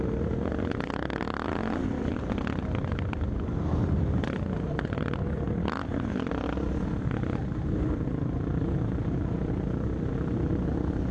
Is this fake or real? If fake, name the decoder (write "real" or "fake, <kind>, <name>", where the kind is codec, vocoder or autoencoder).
real